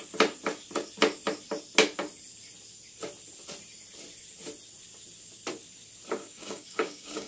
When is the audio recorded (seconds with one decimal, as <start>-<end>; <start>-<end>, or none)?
0.0-6.2